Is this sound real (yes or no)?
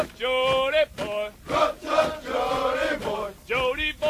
yes